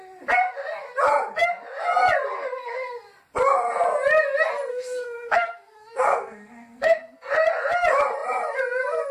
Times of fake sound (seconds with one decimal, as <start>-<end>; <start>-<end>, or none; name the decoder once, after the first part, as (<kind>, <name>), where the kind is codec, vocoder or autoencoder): 4.7-7.3 (codec, SNAC)